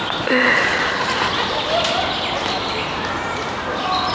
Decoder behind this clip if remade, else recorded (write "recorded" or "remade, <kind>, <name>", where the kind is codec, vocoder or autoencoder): recorded